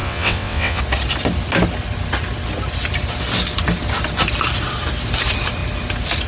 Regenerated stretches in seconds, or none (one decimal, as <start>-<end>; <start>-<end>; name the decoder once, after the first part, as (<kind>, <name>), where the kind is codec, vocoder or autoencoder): 0.0-0.8 (vocoder, WaveNeXt)